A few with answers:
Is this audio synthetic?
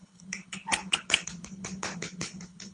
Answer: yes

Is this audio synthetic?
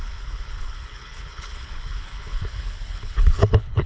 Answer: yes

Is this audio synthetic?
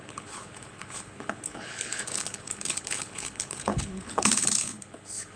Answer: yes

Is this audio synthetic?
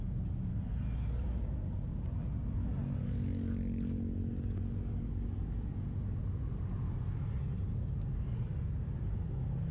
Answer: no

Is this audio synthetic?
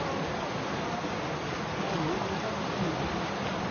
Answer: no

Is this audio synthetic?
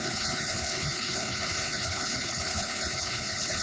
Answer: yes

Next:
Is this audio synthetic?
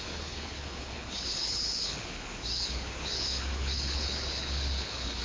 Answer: yes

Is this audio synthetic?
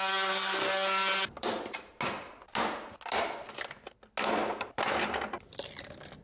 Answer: no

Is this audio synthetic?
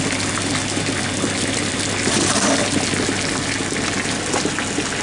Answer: no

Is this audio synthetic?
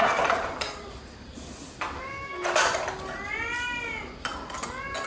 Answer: no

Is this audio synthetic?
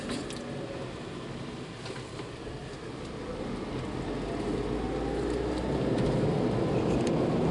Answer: no